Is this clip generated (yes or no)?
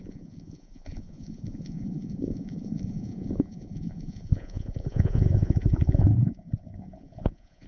yes